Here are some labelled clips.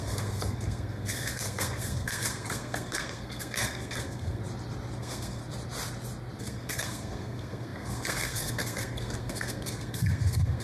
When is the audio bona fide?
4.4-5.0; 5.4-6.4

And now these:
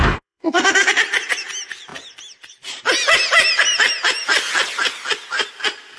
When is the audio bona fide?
0.9-6.0

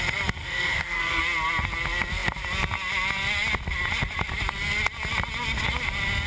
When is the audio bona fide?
0.0-0.4; 1.2-6.3

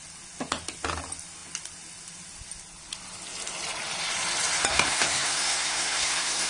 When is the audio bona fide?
0.0-4.7

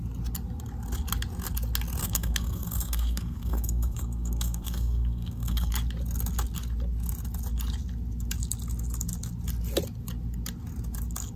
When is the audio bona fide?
0.0-2.0; 5.7-11.4